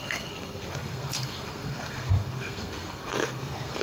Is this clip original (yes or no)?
no